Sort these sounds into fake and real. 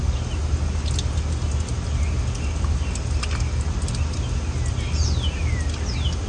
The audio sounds real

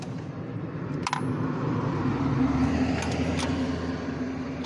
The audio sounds real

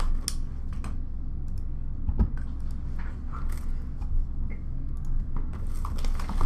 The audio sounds real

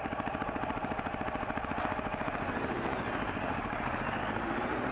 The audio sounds fake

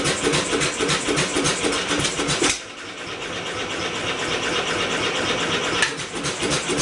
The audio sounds fake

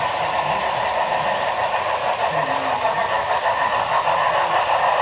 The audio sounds real